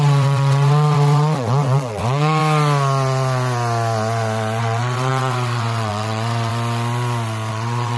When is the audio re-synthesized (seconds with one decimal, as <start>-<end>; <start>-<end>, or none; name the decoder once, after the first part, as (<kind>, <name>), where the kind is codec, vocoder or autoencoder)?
0.0-2.4 (vocoder, WaveNeXt); 4.6-6.5; 7.5-8.0